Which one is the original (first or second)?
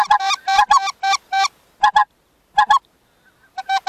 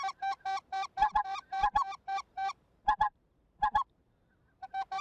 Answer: first